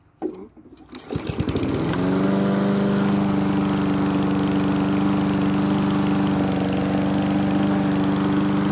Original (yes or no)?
yes